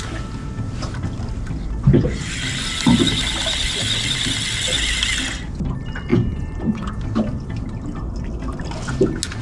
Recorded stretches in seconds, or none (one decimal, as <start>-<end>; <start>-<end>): 0.0-6.1; 6.9-9.4